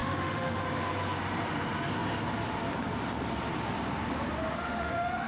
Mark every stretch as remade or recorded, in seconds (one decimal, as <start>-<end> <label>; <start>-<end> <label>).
0.0-0.6 remade; 0.6-4.6 recorded; 4.6-5.3 remade